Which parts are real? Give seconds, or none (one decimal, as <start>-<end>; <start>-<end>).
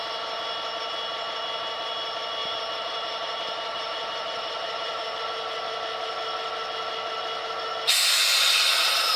0.0-2.4; 5.2-9.2